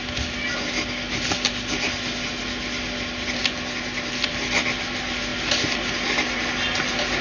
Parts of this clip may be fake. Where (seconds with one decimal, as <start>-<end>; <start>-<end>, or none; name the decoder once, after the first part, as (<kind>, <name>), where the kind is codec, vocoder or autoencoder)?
none

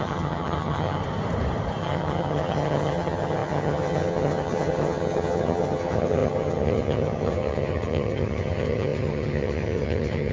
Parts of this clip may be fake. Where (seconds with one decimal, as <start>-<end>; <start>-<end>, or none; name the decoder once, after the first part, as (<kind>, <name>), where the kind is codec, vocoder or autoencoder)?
0.0-1.0 (vocoder, HiFi-GAN); 1.8-10.3